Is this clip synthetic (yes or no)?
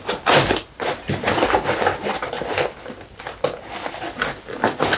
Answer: no